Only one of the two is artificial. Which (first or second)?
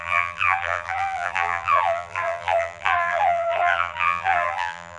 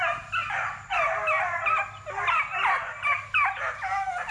first